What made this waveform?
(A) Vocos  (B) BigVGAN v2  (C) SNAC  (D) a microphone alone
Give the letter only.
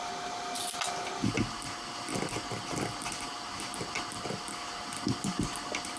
D